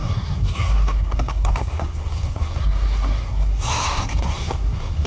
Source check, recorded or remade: remade